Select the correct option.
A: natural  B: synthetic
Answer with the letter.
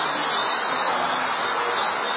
A